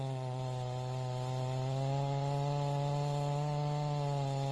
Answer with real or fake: real